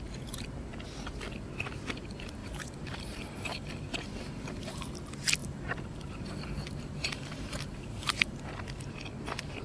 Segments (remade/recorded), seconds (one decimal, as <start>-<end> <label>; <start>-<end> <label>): 0.0-2.4 recorded; 2.4-4.9 remade; 4.9-5.4 recorded; 5.4-8.5 remade; 8.5-9.6 recorded